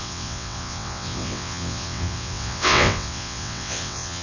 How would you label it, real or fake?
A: fake